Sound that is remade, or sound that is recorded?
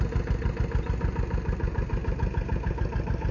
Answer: recorded